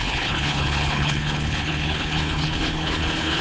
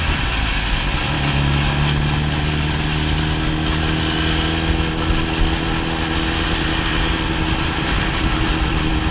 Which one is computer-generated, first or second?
first